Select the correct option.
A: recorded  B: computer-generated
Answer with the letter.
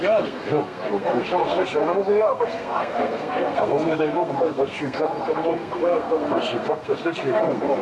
B